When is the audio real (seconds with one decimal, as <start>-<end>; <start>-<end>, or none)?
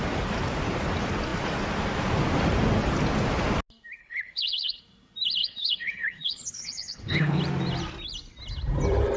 0.0-4.0; 4.8-5.4; 7.4-9.2